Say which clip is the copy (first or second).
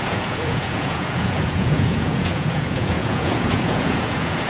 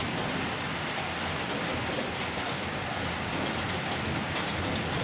first